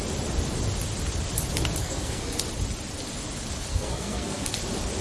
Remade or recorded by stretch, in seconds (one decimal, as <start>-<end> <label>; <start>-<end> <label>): 0.0-1.8 recorded; 1.8-2.4 remade; 2.4-3.7 recorded; 3.7-4.5 remade; 4.5-5.0 recorded